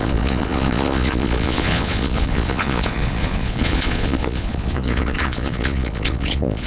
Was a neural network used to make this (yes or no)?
yes